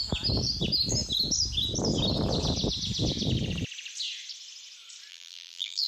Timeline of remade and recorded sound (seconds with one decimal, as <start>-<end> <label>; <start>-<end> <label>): 0.0-5.1 recorded; 5.1-5.9 remade